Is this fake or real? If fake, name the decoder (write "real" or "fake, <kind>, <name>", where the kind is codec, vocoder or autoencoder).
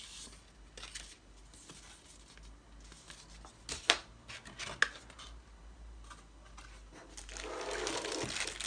real